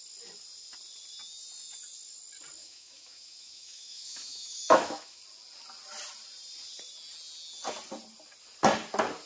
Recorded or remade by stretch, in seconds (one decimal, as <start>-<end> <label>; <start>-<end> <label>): 0.0-2.6 recorded; 2.6-5.2 remade; 5.2-9.2 recorded

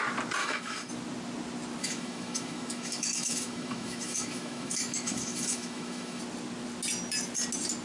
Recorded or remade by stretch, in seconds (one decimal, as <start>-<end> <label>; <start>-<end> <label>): 0.0-0.4 recorded; 0.4-0.9 remade; 0.9-1.8 recorded; 1.8-6.2 remade; 6.2-7.8 recorded

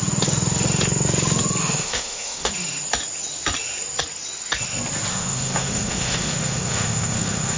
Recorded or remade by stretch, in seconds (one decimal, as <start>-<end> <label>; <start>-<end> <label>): 0.0-1.6 recorded; 1.6-2.5 remade; 2.5-5.1 recorded; 5.1-7.6 remade

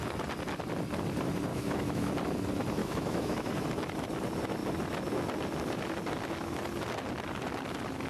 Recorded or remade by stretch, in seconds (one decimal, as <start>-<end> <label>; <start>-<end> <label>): 0.0-1.5 recorded; 1.5-2.1 remade; 2.1-2.8 recorded; 2.8-3.5 remade; 3.5-8.1 recorded

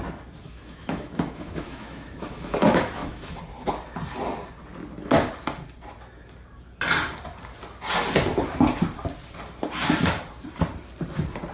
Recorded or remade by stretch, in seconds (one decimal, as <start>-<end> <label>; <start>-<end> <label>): 0.0-0.4 recorded; 0.4-3.4 remade; 3.4-11.5 recorded